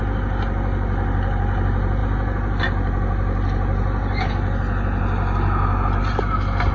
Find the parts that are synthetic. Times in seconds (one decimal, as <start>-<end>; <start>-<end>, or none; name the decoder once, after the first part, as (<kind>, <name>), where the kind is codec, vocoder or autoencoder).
none